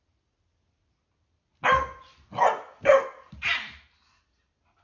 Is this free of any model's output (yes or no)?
yes